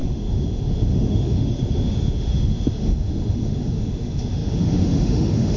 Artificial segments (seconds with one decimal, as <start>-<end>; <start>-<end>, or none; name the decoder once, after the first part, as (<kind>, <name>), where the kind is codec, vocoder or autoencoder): 0.0-5.6 (autoencoder, DAC-VAE)